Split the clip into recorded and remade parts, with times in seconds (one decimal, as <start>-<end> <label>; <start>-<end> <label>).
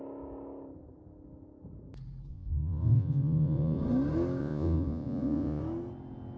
0.0-2.3 recorded; 2.3-3.8 remade; 3.8-4.4 recorded; 4.4-5.6 remade; 5.6-6.4 recorded